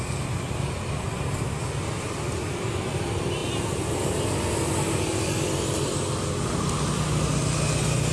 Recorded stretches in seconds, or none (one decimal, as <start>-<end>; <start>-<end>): 0.0-8.1